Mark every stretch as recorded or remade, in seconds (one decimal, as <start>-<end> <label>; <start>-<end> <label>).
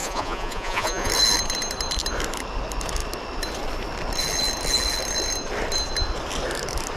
0.0-1.1 remade; 1.1-7.0 recorded